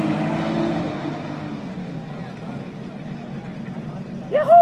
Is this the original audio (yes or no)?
yes